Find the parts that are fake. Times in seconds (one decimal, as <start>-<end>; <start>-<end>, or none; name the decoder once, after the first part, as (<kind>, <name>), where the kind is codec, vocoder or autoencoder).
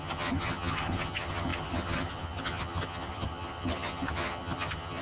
0.0-5.0 (vocoder, HiFi-GAN)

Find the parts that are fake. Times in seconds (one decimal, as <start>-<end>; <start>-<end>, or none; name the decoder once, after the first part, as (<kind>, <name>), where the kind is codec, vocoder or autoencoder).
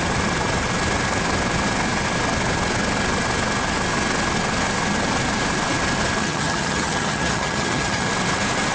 6.2-8.1 (vocoder, HiFi-GAN)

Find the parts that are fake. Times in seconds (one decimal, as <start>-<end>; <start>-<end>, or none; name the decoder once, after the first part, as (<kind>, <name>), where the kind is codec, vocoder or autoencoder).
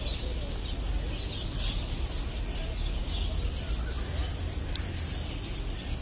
none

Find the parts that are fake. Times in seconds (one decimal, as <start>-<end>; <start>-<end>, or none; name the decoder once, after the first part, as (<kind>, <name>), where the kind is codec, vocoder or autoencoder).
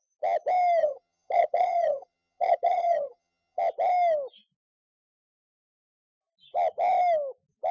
0.8-3.6 (vocoder, HiFi-GAN)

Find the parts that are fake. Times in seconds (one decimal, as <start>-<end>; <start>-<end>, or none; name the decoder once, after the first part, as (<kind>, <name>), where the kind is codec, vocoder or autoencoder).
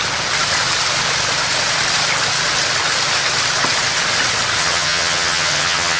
4.6-6.0 (vocoder, HiFi-GAN)